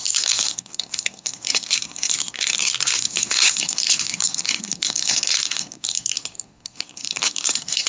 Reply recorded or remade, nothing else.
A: remade